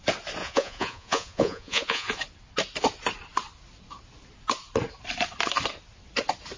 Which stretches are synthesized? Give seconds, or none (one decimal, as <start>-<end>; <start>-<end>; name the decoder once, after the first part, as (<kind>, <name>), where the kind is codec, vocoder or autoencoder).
0.4-2.2 (vocoder, Vocos)